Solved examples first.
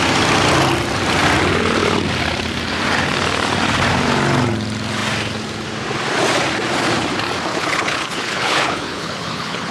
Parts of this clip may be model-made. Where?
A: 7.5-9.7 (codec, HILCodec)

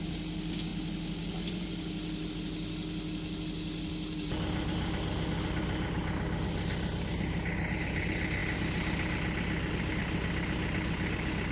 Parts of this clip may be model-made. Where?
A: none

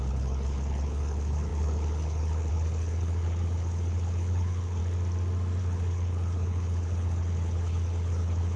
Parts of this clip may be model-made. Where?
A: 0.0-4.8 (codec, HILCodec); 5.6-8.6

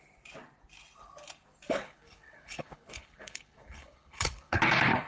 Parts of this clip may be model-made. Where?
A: 1.7-4.6 (codec, HILCodec)

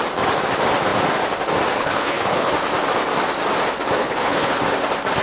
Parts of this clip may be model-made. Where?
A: 1.8-2.5 (codec, HILCodec); 4.0-4.6

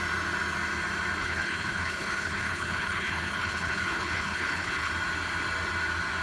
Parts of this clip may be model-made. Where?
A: 1.2-4.9 (codec, HILCodec)